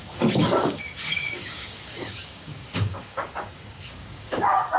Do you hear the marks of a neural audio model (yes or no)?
yes